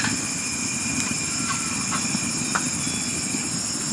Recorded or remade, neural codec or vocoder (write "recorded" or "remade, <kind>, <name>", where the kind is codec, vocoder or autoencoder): recorded